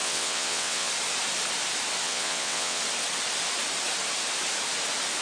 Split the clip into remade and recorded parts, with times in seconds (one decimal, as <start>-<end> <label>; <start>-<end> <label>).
0.0-0.9 remade; 0.9-2.0 recorded; 2.0-2.8 remade; 2.8-5.2 recorded